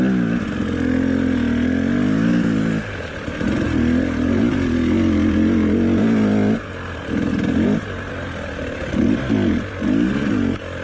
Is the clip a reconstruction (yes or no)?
no